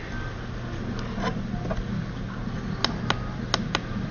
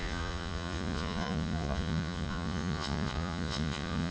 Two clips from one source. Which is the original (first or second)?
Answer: first